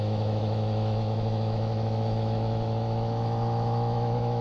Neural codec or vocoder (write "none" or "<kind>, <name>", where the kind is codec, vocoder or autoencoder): autoencoder, DAC-VAE